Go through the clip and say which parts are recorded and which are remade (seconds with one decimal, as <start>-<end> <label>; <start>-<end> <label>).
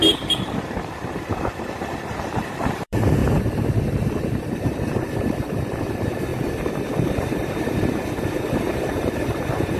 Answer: 0.0-3.2 remade; 3.2-4.3 recorded; 4.3-9.8 remade